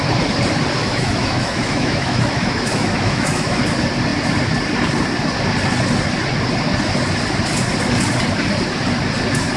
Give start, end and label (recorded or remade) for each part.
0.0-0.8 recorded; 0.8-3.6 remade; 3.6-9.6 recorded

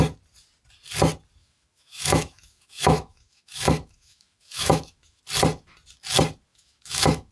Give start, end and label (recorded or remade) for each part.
0.0-1.4 recorded; 1.4-5.2 remade; 5.2-6.5 recorded; 6.5-7.3 remade

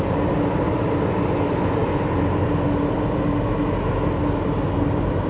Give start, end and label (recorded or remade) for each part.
0.0-5.3 recorded